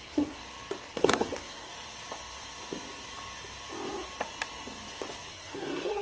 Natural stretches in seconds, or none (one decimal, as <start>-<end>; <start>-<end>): 0.4-0.9; 1.7-5.3